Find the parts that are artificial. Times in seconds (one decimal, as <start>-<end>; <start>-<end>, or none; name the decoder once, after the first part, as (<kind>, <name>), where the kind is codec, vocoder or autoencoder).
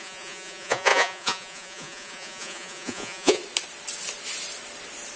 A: 0.0-3.4 (vocoder, Vocos)